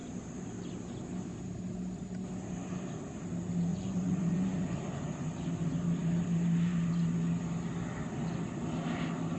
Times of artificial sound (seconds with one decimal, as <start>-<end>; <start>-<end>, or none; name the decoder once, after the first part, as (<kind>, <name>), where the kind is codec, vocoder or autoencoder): 3.7-5.5 (vocoder, Vocos)

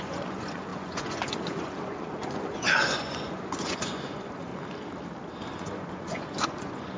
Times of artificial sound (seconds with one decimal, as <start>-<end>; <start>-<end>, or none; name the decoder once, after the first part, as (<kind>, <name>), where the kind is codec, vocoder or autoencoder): 0.0-4.5 (vocoder, Vocos); 5.5-7.0